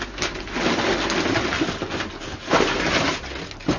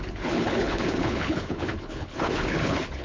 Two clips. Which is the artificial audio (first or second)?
second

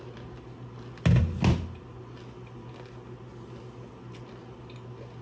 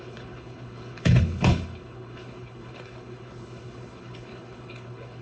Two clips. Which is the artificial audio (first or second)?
second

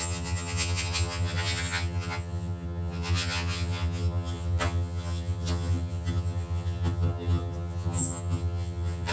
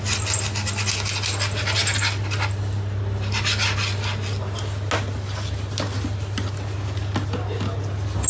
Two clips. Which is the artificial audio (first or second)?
first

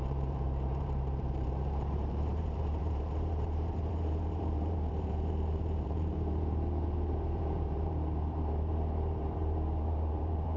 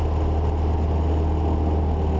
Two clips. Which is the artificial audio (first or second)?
first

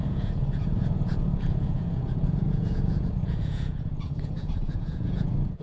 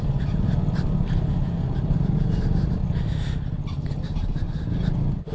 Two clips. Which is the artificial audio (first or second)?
first